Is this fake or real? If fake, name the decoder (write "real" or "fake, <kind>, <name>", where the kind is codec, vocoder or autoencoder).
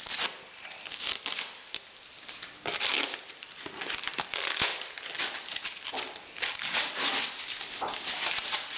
real